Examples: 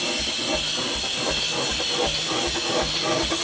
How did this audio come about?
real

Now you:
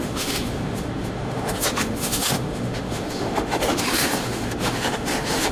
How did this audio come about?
fake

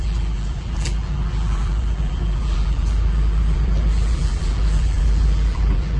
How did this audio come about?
fake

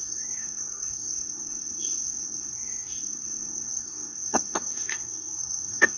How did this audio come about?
fake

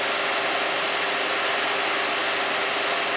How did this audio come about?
real